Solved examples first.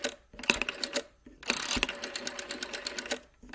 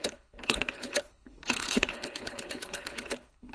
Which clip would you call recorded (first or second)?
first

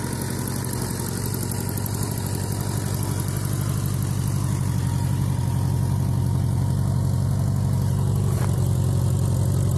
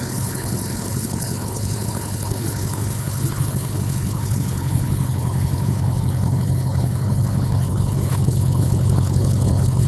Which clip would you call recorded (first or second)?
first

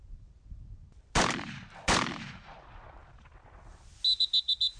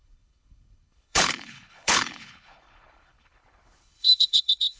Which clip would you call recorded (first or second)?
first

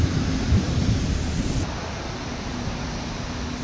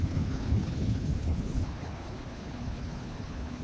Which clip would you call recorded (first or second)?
first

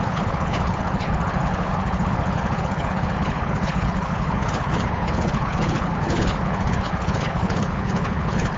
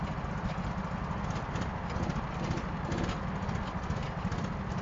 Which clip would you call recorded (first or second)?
second